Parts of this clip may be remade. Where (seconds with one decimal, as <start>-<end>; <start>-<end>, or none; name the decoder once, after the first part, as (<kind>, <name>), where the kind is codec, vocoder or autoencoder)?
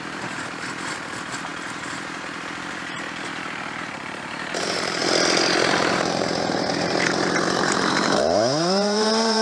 0.0-5.0 (vocoder, BigVGAN v2); 5.7-9.4